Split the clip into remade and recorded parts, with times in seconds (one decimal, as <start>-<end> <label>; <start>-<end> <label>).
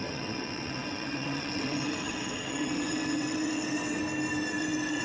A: 0.0-4.0 remade; 4.0-4.6 recorded; 4.6-5.0 remade